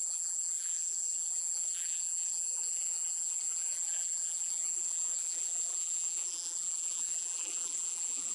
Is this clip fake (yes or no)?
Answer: yes